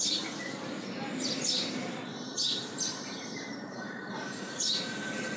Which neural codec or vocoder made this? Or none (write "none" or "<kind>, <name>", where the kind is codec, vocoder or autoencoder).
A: vocoder, BigVGAN v2